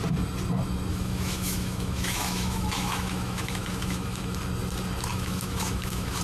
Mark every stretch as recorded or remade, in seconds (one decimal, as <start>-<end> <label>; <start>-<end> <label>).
0.0-0.9 recorded; 0.9-4.4 remade; 4.4-5.1 recorded; 5.1-6.2 remade